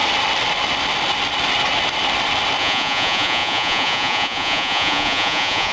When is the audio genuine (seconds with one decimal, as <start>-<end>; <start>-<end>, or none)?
0.0-2.6